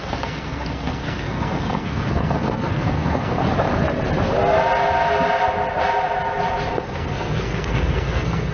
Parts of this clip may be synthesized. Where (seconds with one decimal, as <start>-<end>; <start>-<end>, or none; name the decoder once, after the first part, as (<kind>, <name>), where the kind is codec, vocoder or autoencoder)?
0.0-3.4 (codec, SNAC); 6.7-8.5